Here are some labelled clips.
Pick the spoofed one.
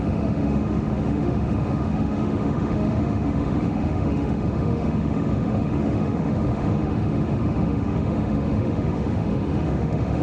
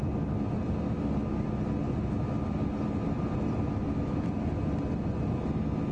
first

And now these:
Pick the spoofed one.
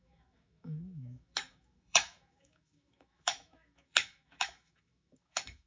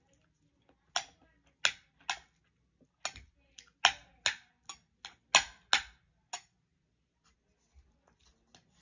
first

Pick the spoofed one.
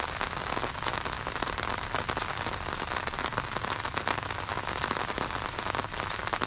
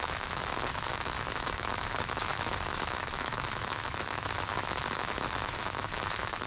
second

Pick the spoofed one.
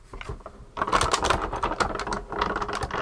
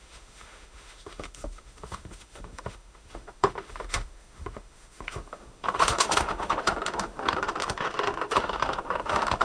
second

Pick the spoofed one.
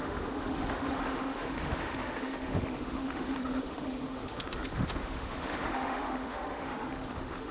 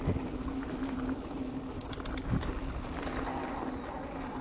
first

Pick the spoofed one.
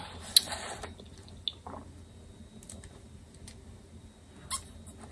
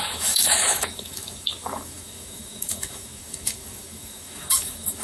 second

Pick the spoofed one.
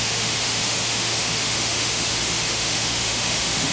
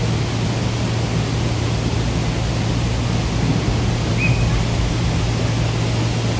first